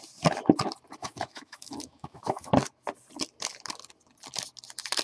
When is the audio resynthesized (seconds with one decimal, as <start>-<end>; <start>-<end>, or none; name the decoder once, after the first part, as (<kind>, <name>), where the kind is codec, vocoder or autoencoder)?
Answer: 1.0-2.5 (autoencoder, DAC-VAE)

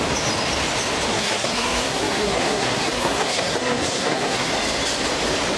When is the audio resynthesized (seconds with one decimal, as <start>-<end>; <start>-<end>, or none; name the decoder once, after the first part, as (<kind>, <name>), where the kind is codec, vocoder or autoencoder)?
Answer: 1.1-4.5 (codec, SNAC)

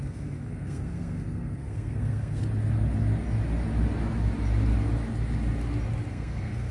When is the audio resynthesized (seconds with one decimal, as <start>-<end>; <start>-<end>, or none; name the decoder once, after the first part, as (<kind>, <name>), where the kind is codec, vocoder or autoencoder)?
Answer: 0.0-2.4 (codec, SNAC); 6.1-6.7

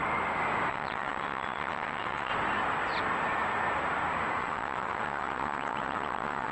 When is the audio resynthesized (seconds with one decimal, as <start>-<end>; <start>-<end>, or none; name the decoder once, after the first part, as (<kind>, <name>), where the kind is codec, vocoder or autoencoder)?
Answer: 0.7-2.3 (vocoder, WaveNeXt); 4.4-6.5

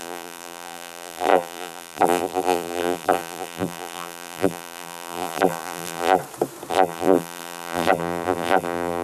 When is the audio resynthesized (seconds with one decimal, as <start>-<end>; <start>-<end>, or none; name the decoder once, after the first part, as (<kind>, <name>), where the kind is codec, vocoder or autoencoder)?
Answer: 0.0-6.2 (vocoder, BigVGAN v2); 6.7-9.0

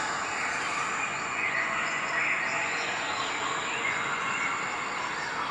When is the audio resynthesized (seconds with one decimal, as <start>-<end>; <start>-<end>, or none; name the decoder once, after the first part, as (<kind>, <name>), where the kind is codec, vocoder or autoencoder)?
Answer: 1.1-2.2 (vocoder, Vocos); 2.6-3.1; 3.8-4.5